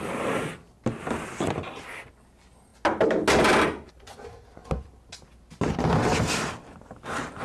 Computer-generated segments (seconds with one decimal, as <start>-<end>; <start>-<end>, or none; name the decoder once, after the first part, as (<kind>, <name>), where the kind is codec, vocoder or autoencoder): none